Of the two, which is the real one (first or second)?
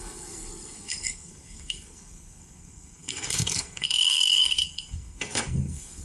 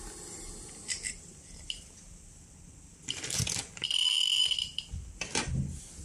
second